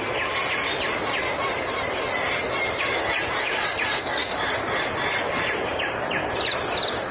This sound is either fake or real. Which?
real